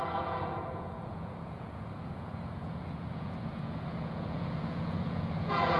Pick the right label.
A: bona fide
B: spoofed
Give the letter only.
B